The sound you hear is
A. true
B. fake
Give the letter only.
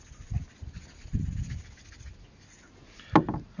A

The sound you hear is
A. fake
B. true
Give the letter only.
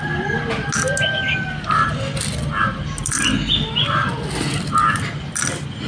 B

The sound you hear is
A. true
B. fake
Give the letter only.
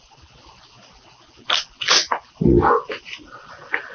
A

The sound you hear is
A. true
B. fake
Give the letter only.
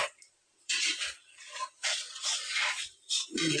B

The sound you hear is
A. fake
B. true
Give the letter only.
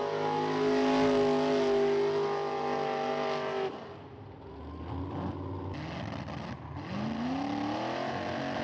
B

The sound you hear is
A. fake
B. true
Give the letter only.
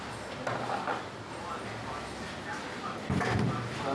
B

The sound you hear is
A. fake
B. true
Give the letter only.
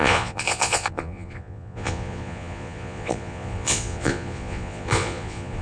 A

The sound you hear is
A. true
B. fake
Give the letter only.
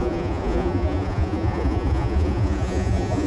B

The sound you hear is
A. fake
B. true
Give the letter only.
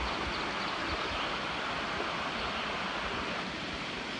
B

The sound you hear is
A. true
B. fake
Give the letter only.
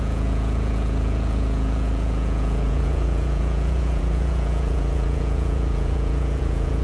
B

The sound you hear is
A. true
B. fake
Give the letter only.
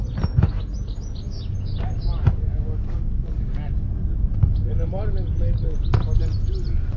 A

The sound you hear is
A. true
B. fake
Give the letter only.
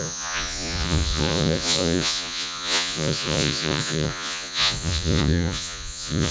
B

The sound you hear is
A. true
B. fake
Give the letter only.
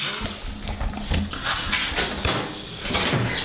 A